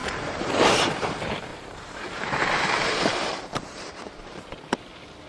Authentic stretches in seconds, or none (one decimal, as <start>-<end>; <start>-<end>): 1.1-1.5; 4.7-5.3